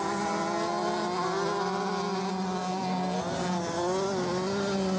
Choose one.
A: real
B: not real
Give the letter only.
A